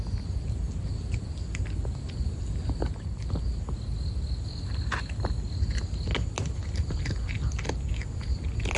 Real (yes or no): yes